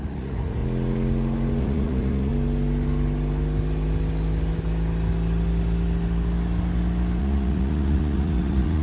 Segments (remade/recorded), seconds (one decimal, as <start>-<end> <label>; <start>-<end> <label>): 0.0-0.6 remade; 0.6-1.6 recorded; 1.6-2.3 remade; 2.3-7.2 recorded; 7.2-8.8 remade